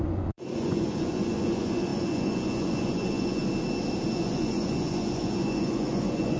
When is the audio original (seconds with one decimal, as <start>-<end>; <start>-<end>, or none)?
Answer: 3.4-4.1